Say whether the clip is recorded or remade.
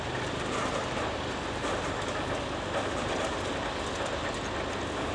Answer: recorded